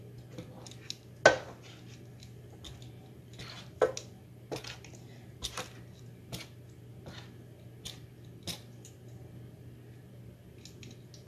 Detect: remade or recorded recorded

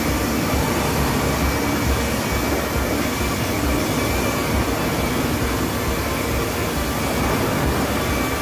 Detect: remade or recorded recorded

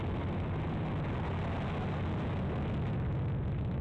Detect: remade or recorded recorded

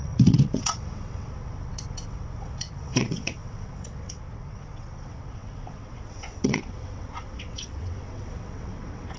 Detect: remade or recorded remade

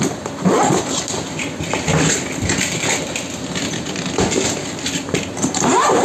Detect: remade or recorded recorded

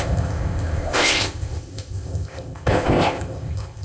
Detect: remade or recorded remade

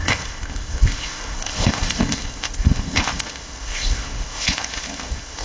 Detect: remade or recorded remade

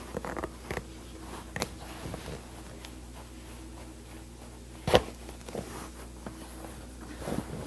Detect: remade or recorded recorded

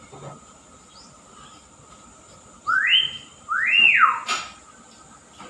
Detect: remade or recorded recorded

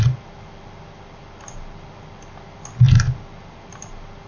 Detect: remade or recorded recorded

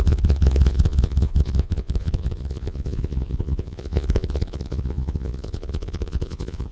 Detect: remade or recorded remade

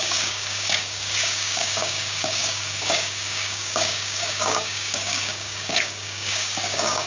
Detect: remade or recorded remade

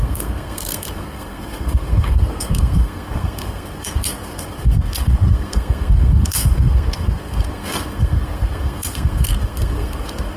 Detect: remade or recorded remade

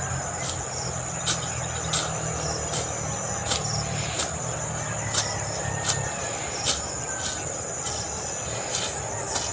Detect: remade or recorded recorded